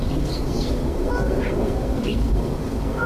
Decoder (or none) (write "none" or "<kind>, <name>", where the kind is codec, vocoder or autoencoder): codec, SNAC